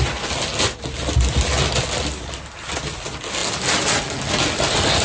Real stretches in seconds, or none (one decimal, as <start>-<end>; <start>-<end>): 0.0-5.0